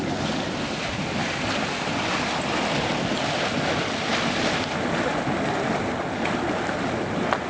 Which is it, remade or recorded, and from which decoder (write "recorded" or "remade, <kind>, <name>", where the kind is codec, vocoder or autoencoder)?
recorded